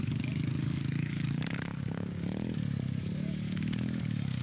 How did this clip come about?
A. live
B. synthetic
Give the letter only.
B